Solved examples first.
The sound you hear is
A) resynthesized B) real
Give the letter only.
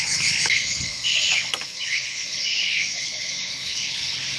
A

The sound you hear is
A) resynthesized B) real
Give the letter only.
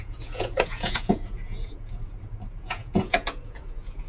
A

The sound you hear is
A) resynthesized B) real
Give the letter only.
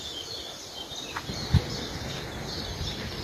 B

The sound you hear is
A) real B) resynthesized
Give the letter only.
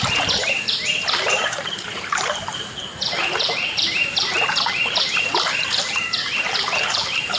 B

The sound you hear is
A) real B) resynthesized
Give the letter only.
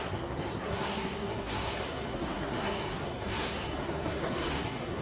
B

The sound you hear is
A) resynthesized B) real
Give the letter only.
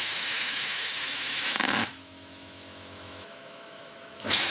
A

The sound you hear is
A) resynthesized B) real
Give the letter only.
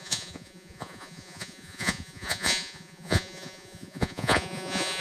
A